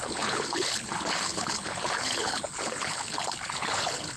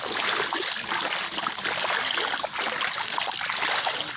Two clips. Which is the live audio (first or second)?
second